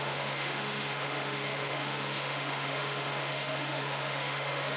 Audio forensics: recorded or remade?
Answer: remade